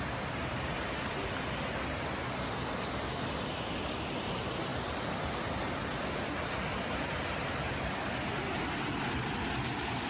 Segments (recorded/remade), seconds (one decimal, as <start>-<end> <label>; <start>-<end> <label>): 0.0-10.1 recorded